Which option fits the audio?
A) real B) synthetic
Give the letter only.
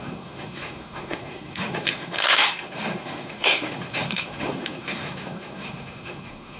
B